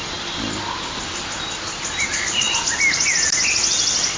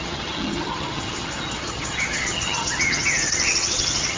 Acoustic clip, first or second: first